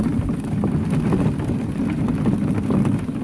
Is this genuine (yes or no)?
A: yes